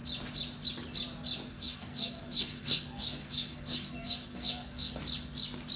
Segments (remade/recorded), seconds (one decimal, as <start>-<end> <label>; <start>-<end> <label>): 0.0-1.5 recorded; 1.5-5.0 remade; 5.0-5.8 recorded